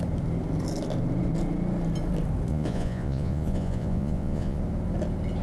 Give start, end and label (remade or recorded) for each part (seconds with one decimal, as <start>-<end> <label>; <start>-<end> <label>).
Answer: 0.0-2.5 recorded; 2.5-4.6 remade; 4.6-5.4 recorded